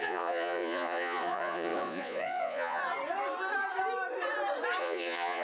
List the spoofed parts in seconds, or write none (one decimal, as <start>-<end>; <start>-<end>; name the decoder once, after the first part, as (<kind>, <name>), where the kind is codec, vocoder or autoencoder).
0.0-2.8 (vocoder, Vocos); 4.8-5.4